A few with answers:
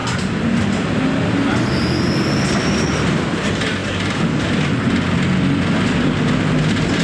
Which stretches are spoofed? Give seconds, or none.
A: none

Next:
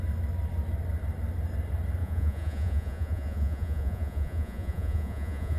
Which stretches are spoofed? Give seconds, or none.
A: 2.0-5.6 (vocoder, Vocos)